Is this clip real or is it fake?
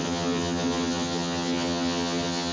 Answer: fake